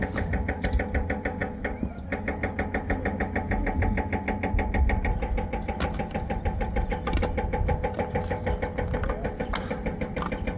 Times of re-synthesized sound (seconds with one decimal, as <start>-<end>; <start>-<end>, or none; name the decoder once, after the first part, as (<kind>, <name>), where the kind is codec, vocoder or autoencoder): none